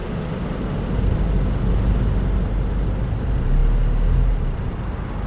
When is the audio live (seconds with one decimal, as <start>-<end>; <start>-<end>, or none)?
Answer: 0.0-5.3